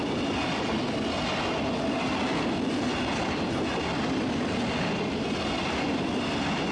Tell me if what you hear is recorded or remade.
recorded